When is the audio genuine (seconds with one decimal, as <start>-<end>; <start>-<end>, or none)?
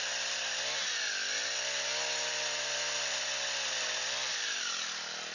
0.0-5.3